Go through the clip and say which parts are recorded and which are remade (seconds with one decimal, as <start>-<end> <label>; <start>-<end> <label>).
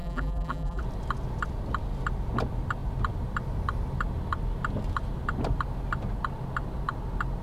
0.0-0.8 remade; 0.8-7.4 recorded